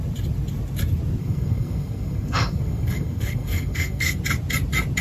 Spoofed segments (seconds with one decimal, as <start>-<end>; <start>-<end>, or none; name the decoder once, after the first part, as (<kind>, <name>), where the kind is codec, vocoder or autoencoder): 1.2-4.2 (codec, SNAC)